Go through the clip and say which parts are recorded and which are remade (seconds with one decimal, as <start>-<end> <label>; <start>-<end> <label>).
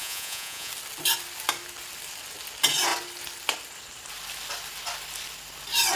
0.0-0.7 remade; 0.7-6.0 recorded